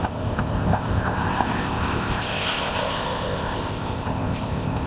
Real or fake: fake